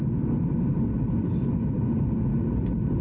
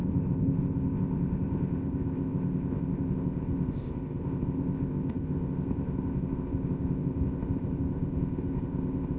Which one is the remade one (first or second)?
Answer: second